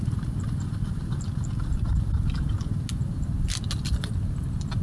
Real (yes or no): yes